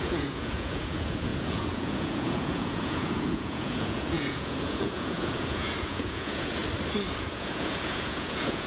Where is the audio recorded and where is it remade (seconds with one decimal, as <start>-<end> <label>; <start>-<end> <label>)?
0.0-6.6 remade; 6.6-7.2 recorded; 7.2-8.7 remade

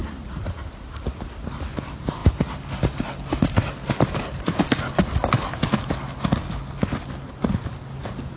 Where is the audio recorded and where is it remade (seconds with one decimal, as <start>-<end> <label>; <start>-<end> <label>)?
0.0-8.4 recorded

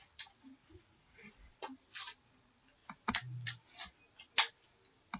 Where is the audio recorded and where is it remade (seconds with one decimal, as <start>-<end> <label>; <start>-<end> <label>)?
0.0-0.6 recorded; 0.6-1.5 remade; 1.5-5.2 recorded

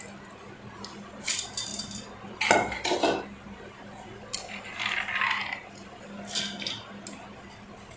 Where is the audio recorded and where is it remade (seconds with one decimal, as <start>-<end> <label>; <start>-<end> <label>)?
0.0-8.0 recorded

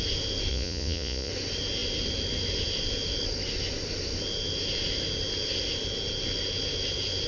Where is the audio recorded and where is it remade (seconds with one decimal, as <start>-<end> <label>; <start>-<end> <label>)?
0.0-0.5 recorded; 0.5-1.3 remade; 1.3-7.3 recorded

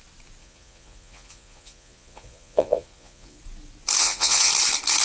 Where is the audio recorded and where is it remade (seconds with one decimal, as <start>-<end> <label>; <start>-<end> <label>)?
0.0-0.4 recorded; 0.4-3.4 remade; 3.4-4.0 recorded; 4.0-4.5 remade; 4.5-5.0 recorded